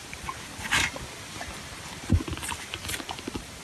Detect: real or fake fake